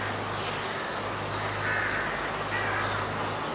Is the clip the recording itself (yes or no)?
yes